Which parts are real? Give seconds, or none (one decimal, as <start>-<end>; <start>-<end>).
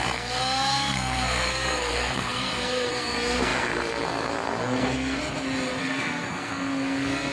5.2-5.8